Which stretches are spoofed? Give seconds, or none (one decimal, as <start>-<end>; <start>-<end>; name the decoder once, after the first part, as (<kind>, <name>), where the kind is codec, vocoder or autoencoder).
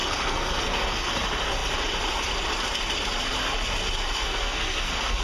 0.0-1.1 (codec, SNAC); 4.2-5.2